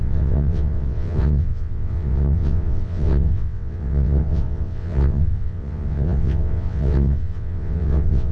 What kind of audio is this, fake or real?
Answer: fake